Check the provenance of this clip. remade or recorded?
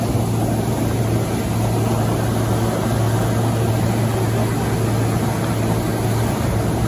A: recorded